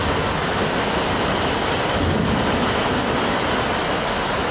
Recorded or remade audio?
recorded